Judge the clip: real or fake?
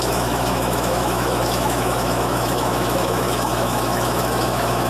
fake